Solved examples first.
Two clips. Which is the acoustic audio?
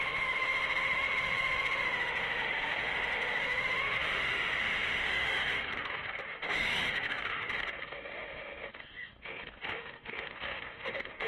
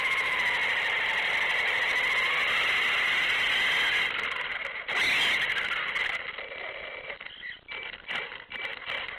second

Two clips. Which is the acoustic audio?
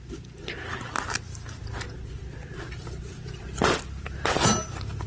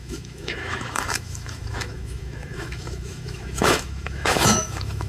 first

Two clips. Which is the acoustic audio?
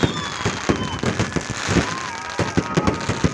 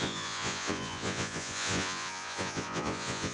first